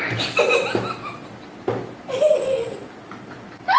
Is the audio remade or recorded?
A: recorded